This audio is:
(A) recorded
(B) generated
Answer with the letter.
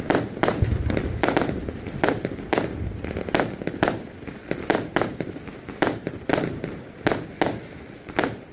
A